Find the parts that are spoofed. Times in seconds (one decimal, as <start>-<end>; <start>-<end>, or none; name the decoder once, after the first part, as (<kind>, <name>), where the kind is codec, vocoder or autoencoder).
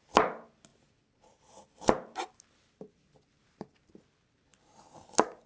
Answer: none